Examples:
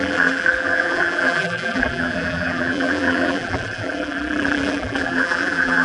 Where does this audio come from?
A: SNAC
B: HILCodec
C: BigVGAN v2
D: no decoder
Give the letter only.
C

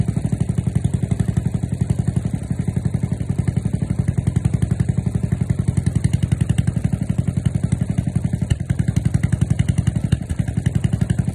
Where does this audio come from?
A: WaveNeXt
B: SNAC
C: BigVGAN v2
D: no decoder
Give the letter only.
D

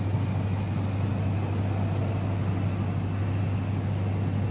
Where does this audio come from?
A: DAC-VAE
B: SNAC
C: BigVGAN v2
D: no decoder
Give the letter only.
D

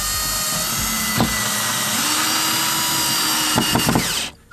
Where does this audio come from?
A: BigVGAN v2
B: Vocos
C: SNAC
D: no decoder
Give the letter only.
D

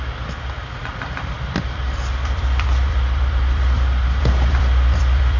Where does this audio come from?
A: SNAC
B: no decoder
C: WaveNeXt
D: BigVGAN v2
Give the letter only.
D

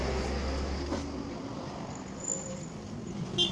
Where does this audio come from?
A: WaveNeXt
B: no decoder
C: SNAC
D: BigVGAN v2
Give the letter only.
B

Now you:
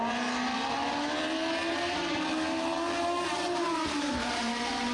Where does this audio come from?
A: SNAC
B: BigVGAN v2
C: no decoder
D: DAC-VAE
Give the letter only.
B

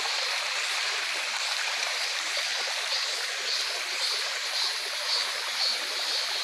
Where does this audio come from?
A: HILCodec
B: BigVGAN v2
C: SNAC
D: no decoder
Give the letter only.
B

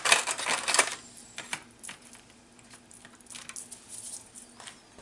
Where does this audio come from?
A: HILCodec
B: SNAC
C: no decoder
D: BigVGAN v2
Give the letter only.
C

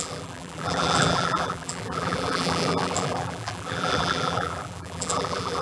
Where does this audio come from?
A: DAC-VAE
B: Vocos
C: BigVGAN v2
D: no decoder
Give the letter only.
C